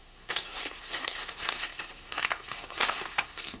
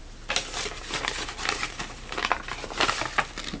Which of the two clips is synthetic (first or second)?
first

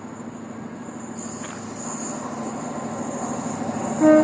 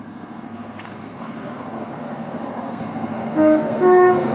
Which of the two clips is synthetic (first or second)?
second